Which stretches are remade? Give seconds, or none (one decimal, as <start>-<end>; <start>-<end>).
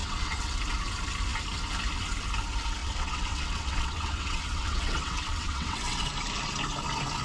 0.0-0.6; 2.8-6.1